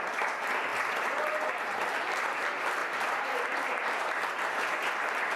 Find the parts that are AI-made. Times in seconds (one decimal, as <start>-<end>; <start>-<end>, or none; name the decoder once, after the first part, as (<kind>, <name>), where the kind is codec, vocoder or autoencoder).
2.8-4.7 (vocoder, BigVGAN v2)